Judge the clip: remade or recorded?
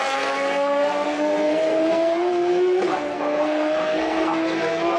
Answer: remade